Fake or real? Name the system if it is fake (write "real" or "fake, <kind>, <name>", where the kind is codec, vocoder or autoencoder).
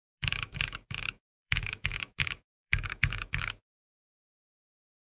fake, codec, DAC